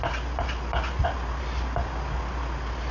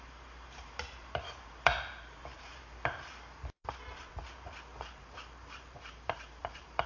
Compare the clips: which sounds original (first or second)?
first